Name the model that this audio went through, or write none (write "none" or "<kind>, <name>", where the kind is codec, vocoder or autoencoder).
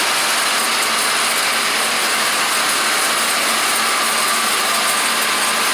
none